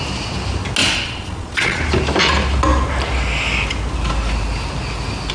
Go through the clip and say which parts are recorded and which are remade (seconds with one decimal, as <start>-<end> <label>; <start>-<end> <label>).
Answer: 0.0-0.8 recorded; 0.8-1.8 remade; 1.8-5.3 recorded